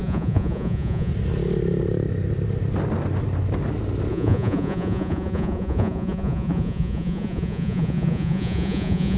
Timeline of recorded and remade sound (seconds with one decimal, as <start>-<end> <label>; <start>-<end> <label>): 0.0-1.1 remade; 1.1-4.1 recorded; 4.1-9.2 remade